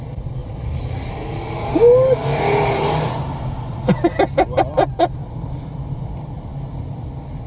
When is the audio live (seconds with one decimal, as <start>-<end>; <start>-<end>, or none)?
0.0-7.5